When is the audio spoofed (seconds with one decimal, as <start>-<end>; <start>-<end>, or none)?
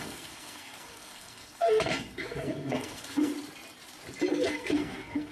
0.0-3.3; 4.3-5.3